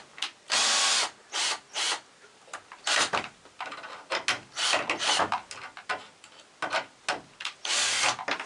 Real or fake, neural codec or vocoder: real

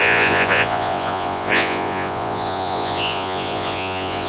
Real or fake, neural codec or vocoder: fake, vocoder, Vocos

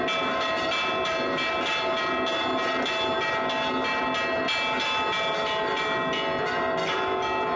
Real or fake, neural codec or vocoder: real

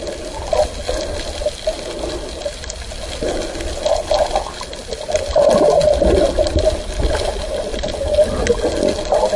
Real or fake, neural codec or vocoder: real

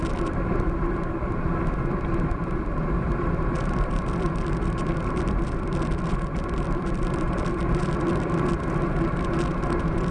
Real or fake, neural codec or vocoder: fake, vocoder, BigVGAN v2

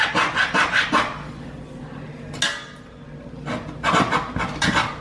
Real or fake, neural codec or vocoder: real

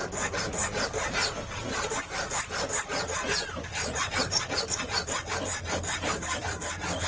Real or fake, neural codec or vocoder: real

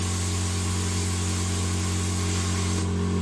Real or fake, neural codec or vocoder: real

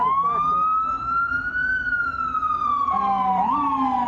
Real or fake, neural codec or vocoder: real